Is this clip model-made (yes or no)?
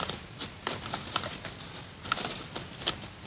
no